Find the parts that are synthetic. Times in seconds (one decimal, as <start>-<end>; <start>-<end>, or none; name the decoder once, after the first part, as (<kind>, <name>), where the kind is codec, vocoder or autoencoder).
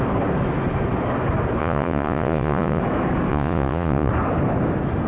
1.6-2.8 (vocoder, Vocos); 3.3-4.1